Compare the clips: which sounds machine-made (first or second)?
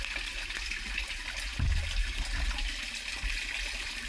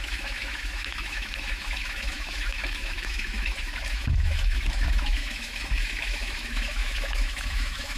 second